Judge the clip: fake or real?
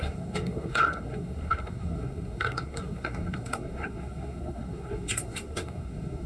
fake